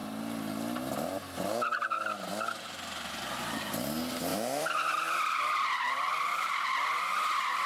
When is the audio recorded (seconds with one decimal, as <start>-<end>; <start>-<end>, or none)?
0.0-4.3; 7.0-7.7